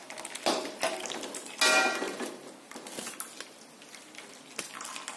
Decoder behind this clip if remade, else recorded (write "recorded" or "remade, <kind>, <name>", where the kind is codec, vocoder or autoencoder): recorded